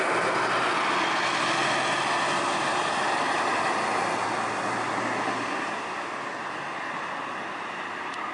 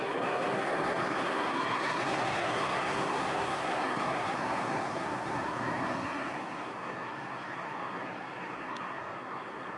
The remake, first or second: second